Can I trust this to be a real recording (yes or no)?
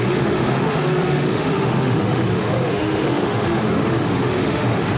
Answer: no